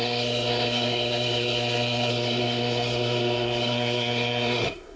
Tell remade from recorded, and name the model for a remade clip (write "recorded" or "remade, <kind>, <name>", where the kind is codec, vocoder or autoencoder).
remade, codec, SNAC